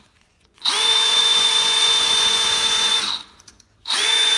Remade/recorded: remade